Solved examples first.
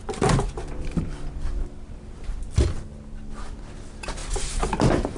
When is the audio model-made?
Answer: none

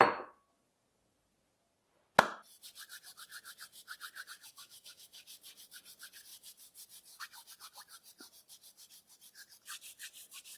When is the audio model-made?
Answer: 4.4-5.2 (autoencoder, DAC-VAE)

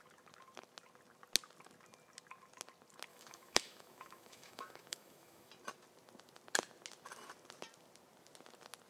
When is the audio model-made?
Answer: 3.1-5.5 (autoencoder, DAC-VAE)